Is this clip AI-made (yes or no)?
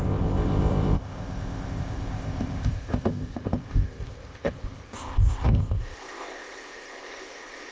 yes